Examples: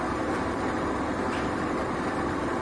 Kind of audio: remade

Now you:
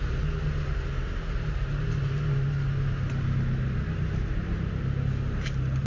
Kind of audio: recorded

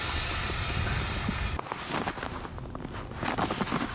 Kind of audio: recorded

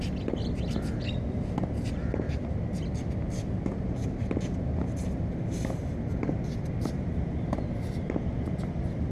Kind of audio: recorded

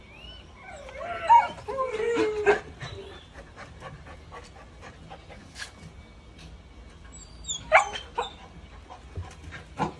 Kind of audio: recorded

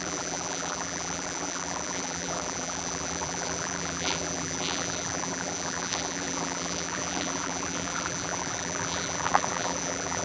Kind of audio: remade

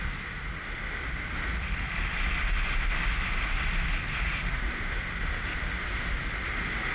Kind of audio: recorded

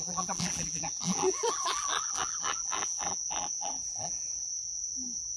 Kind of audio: remade